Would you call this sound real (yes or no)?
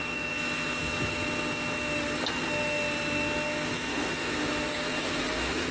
yes